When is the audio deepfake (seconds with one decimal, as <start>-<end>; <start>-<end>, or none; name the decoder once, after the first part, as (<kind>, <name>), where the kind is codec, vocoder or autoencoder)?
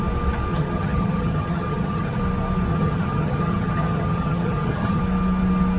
0.5-2.2 (vocoder, HiFi-GAN); 2.7-5.0